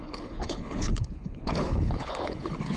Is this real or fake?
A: fake